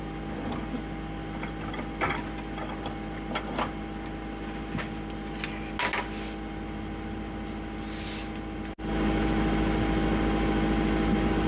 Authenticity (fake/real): real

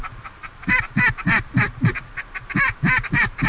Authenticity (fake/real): real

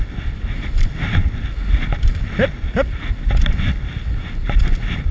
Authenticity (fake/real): real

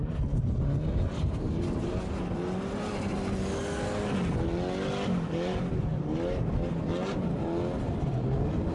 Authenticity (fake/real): real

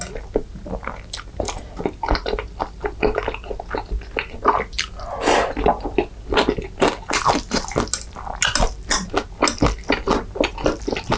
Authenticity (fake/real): real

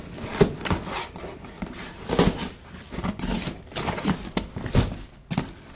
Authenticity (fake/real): real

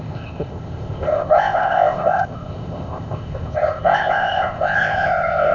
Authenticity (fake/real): fake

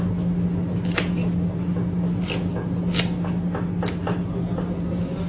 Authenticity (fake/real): real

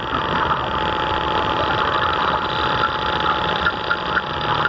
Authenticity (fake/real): real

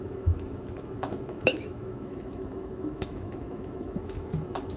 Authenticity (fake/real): fake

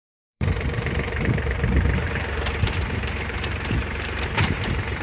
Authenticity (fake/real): fake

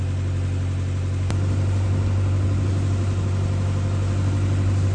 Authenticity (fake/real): real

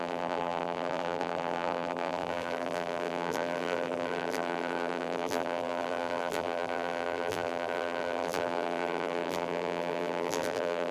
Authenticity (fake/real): fake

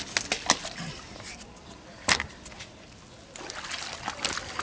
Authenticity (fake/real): real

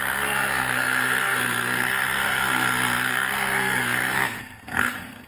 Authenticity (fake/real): fake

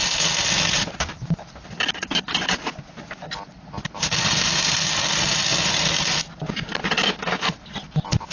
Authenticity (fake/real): real